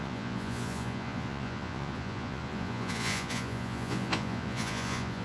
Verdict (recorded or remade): remade